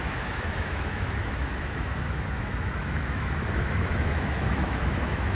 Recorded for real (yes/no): no